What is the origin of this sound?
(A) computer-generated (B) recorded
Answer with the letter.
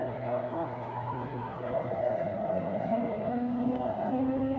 A